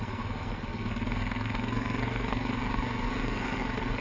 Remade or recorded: remade